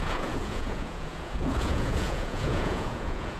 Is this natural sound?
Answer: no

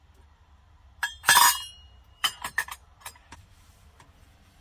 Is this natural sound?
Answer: no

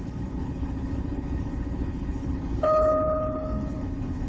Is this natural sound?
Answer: no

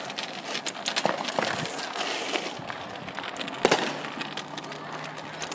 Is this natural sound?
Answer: yes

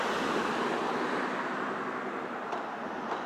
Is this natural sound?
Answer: yes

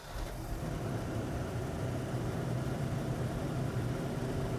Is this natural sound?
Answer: no